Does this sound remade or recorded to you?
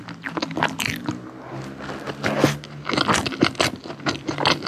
recorded